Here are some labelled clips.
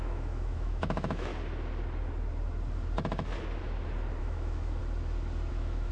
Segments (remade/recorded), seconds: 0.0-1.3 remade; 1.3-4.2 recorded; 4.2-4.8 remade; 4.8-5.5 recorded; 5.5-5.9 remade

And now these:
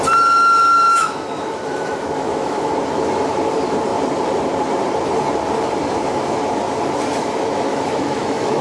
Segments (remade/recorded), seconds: 0.0-0.9 recorded; 0.9-2.7 remade; 2.7-7.7 recorded; 7.7-8.6 remade

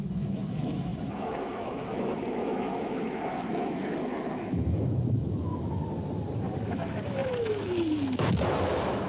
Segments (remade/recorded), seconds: 0.0-5.8 remade; 5.8-6.7 recorded; 6.7-9.1 remade

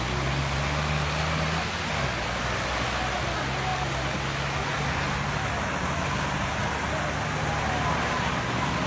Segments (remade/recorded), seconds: 0.0-8.9 recorded